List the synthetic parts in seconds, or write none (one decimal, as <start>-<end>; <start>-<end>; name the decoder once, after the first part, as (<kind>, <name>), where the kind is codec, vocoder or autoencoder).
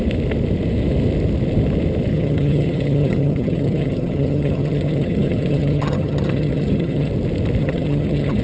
2.1-7.1 (vocoder, HiFi-GAN); 7.6-8.4